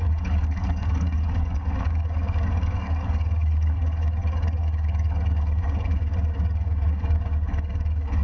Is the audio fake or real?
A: fake